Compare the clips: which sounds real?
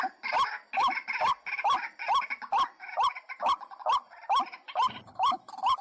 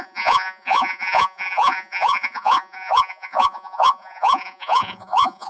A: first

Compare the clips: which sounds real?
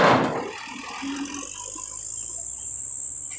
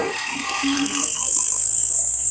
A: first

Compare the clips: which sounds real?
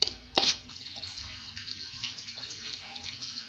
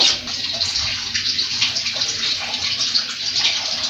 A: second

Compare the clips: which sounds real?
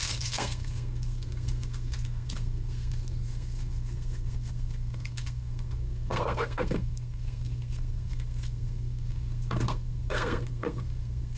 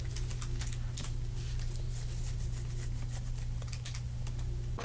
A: second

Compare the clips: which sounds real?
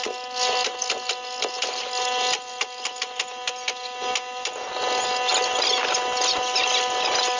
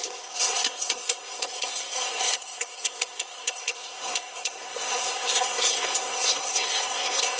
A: first